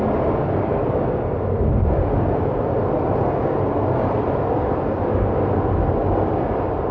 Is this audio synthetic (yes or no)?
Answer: yes